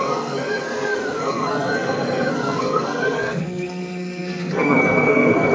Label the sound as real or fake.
fake